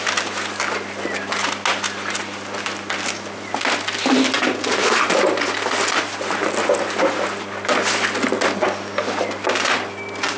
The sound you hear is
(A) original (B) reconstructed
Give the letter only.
A